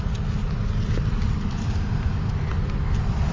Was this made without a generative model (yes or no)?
yes